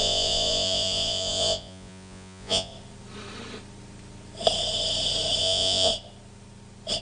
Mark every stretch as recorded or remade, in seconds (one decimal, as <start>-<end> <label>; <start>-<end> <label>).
0.0-2.7 remade; 2.7-5.4 recorded; 5.4-5.9 remade; 5.9-7.0 recorded